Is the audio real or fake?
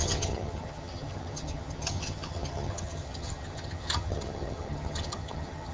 fake